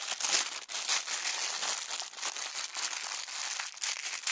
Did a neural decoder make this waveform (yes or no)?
no